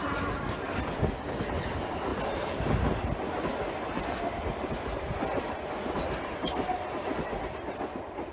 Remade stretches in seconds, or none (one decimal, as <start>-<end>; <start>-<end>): none